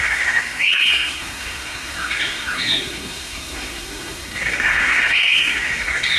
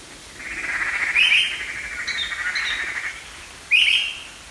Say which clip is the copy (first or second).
first